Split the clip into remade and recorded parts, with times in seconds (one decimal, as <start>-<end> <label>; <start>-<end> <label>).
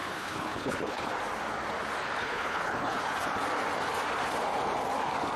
0.0-1.1 remade; 1.1-2.2 recorded; 2.2-3.0 remade; 3.0-5.4 recorded